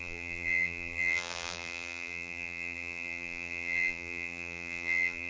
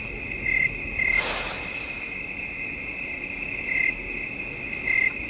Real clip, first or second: second